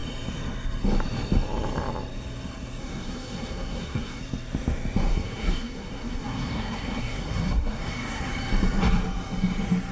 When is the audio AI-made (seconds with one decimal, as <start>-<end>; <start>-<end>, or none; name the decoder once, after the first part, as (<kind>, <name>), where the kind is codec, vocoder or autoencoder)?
2.8-4.2 (codec, SNAC); 5.1-8.3